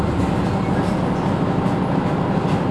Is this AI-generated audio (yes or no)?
no